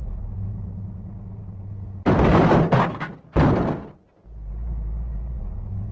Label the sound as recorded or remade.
recorded